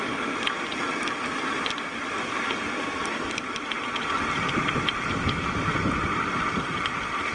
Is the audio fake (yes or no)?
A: yes